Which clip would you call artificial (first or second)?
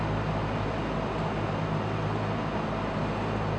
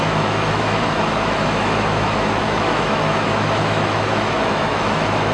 second